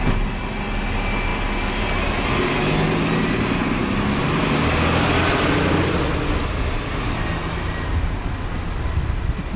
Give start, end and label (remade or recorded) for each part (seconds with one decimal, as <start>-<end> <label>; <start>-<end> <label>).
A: 0.0-9.6 recorded